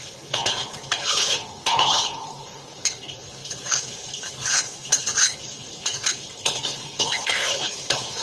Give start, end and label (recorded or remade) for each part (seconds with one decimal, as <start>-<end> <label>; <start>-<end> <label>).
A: 0.0-8.2 remade